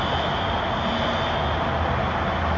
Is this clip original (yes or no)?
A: yes